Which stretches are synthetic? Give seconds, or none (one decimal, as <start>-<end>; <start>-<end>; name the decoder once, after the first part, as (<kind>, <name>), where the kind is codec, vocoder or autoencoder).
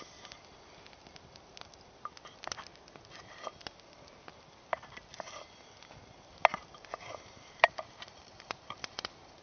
6.5-9.4 (vocoder, BigVGAN v2)